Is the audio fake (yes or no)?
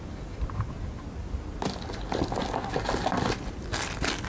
no